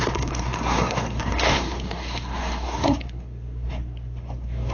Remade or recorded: remade